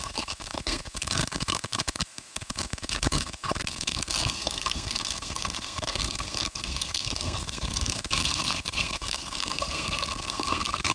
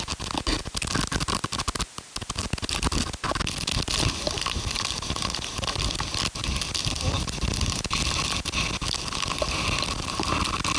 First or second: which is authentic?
second